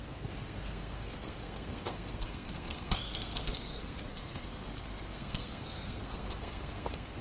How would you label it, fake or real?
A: fake